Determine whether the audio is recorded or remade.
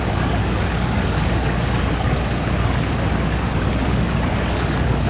remade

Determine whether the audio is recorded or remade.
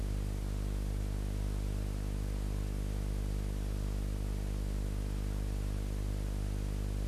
recorded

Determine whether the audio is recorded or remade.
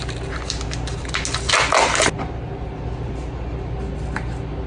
recorded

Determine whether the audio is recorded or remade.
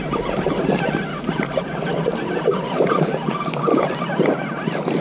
recorded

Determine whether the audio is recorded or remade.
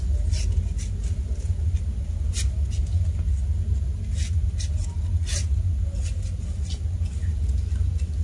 recorded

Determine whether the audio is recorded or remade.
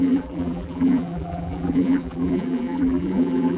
remade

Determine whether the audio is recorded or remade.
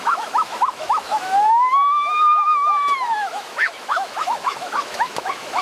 remade